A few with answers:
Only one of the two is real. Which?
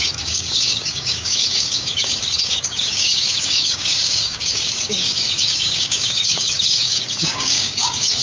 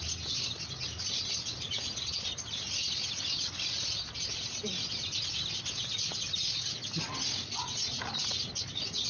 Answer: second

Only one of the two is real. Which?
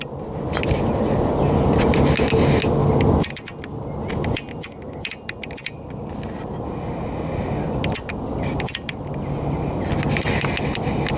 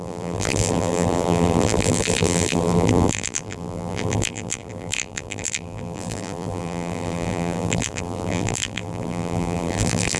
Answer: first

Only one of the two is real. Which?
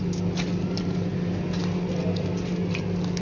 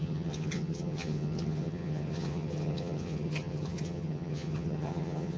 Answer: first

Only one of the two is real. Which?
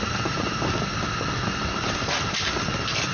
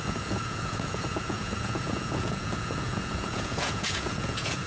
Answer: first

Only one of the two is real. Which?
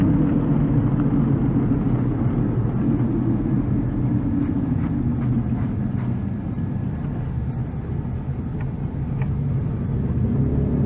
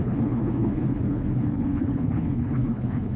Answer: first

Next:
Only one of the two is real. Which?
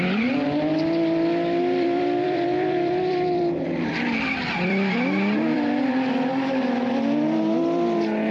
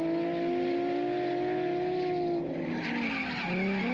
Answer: second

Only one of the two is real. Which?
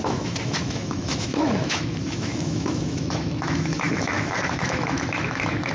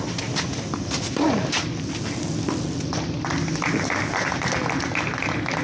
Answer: second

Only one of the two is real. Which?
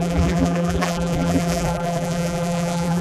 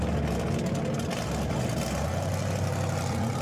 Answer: second